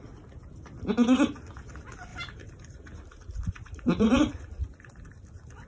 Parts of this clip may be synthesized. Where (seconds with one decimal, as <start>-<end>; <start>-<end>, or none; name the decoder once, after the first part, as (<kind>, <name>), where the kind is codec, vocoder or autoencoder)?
2.1-4.2 (vocoder, BigVGAN v2)